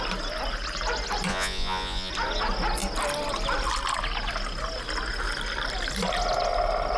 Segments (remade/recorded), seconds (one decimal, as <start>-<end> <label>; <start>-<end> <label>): 0.0-1.3 recorded; 1.3-2.1 remade; 2.1-7.0 recorded